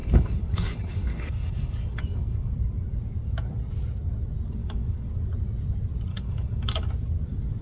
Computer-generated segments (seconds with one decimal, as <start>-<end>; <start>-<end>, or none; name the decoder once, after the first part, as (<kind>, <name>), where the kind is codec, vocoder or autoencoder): 0.0-2.5 (codec, DAC); 4.6-5.1; 6.1-6.9